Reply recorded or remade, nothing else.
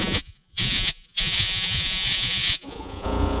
remade